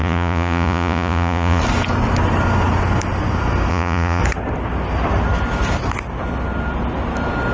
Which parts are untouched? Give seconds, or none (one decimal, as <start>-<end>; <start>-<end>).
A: 1.6-3.7; 4.2-7.5